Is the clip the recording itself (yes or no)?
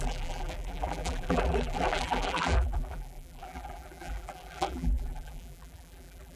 no